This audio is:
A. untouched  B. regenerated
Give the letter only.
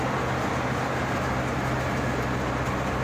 A